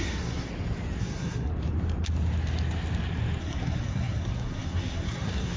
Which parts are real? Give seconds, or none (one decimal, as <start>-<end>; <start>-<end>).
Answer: 0.5-1.0; 1.5-3.4